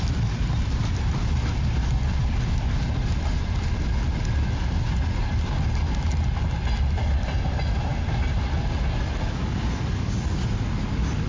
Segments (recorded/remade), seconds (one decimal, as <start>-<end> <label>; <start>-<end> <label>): 0.0-11.3 recorded